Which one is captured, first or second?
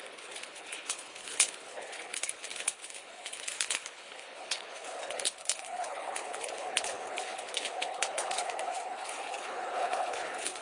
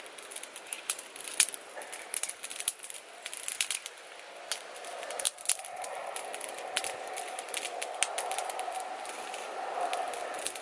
second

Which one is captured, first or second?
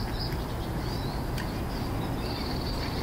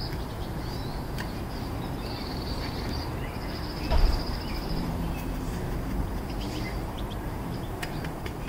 first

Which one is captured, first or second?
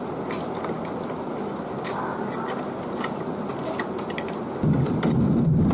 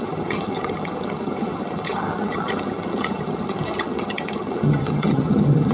first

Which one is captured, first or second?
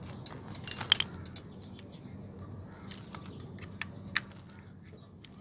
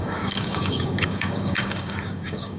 first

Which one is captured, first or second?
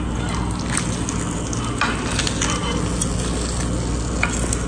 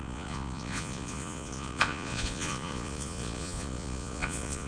first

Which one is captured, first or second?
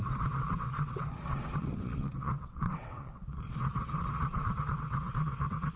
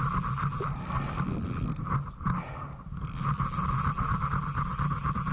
second